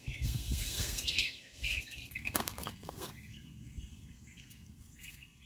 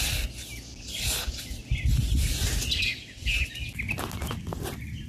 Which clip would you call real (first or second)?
second